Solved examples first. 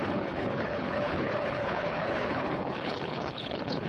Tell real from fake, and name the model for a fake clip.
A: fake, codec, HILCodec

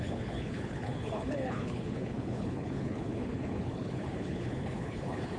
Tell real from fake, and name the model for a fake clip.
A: fake, codec, HILCodec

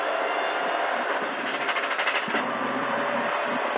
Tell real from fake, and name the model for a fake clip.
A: real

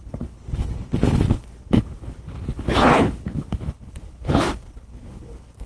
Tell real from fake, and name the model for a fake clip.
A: fake, codec, HILCodec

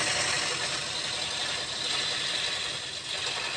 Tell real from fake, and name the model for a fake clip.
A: real